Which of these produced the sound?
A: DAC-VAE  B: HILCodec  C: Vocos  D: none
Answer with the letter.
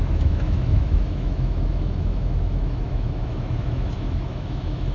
A